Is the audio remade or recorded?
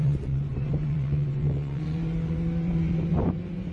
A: remade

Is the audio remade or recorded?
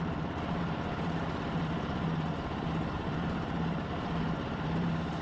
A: remade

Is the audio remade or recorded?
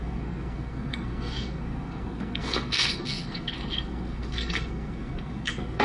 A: remade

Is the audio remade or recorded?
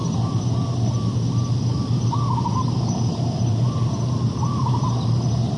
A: recorded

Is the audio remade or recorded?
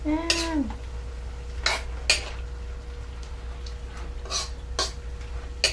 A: recorded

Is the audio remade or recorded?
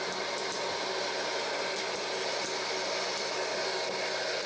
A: recorded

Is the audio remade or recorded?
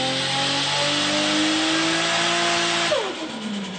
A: recorded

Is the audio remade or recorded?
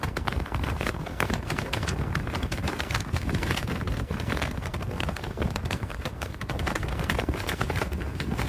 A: remade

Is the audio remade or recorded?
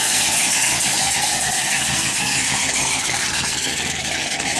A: remade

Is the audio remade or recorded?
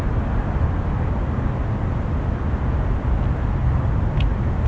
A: recorded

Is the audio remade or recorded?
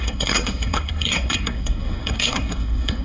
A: remade